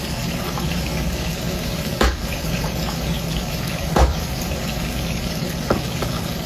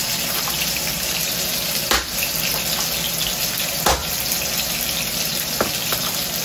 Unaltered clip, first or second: second